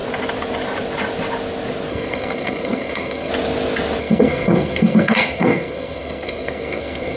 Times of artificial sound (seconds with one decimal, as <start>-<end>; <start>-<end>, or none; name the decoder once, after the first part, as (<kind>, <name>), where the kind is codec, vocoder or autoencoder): 1.9-3.3 (codec, SNAC); 4.0-7.2